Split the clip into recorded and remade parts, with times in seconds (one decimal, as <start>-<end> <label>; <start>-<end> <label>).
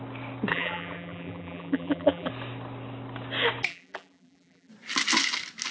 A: 0.0-0.5 recorded; 0.5-2.3 remade; 2.3-3.7 recorded; 3.7-4.7 remade; 4.7-5.7 recorded